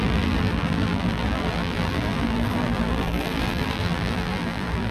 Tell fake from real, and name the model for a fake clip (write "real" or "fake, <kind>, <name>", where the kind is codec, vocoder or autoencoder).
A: fake, vocoder, BigVGAN v2